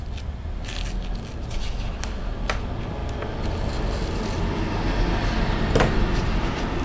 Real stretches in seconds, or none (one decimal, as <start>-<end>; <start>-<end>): 0.0-6.8